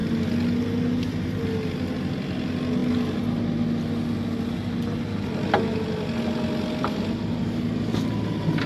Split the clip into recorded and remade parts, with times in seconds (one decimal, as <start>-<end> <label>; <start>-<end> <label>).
0.0-8.7 recorded